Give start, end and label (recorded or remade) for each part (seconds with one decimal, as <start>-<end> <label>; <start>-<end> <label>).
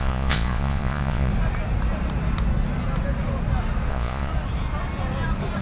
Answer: 0.0-1.3 remade; 1.3-3.9 recorded; 3.9-4.3 remade; 4.3-5.6 recorded